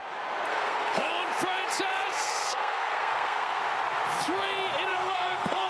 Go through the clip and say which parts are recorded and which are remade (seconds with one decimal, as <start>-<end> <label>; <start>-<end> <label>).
0.0-0.5 recorded; 0.5-1.1 remade; 1.1-2.1 recorded; 2.1-3.6 remade; 3.6-4.9 recorded; 4.9-5.7 remade